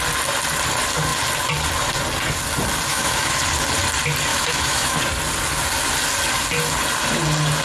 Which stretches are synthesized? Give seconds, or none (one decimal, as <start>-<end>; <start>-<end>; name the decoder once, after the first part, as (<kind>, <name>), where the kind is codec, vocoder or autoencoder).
2.9-3.4 (autoencoder, DAC-VAE); 4.3-5.0